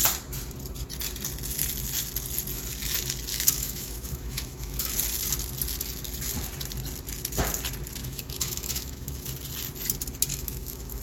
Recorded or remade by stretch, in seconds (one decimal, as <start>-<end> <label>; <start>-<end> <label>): 0.0-3.3 recorded; 3.3-4.9 remade; 4.9-8.0 recorded; 8.0-9.3 remade; 9.3-10.3 recorded; 10.3-11.0 remade